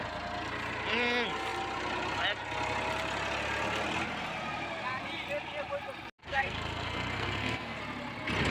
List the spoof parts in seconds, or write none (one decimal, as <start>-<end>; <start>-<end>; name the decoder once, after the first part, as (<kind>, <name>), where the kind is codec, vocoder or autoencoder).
6.2-7.8 (codec, SNAC)